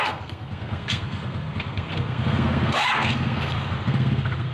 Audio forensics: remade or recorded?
remade